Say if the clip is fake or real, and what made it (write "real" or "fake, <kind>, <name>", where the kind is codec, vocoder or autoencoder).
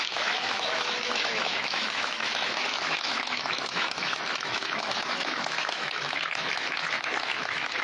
fake, autoencoder, DAC-VAE